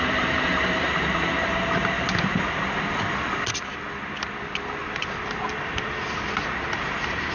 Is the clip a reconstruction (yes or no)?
no